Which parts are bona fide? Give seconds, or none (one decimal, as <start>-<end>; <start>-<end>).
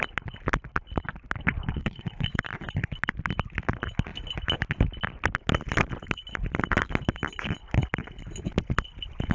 0.0-1.7; 2.4-9.3